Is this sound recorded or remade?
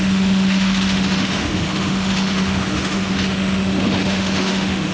remade